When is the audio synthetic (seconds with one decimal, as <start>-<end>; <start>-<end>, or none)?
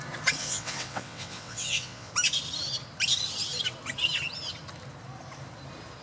0.4-2.1